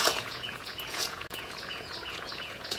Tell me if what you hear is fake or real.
fake